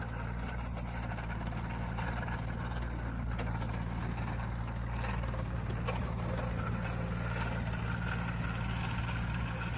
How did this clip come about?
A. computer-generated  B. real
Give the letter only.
B